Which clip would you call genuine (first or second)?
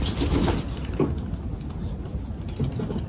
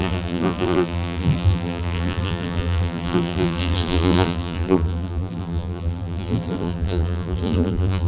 first